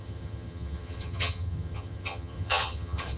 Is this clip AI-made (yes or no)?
yes